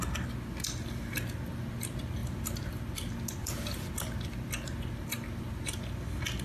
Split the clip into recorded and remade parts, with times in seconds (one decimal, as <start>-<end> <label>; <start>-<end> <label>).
0.0-2.2 recorded; 2.2-2.8 remade; 2.8-3.4 recorded; 3.4-3.9 remade; 3.9-6.4 recorded